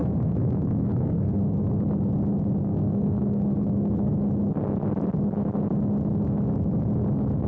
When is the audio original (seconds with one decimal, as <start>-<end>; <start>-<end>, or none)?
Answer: 1.4-2.6; 4.1-7.5